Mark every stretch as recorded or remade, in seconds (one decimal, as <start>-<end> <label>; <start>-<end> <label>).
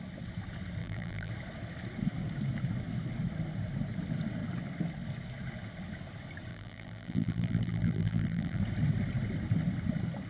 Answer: 0.0-0.8 recorded; 0.8-1.3 remade; 1.3-6.5 recorded; 6.5-8.6 remade; 8.6-10.3 recorded